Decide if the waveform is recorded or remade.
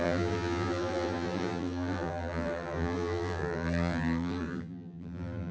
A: remade